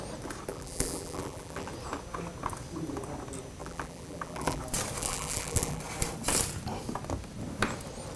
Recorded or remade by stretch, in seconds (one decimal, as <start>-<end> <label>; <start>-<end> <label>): 0.0-0.5 recorded; 0.5-1.7 remade; 1.7-3.6 recorded; 3.6-4.6 remade; 4.6-5.0 recorded; 5.0-5.8 remade; 5.8-8.2 recorded